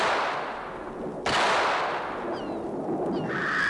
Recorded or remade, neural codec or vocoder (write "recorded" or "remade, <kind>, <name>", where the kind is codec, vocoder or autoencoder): recorded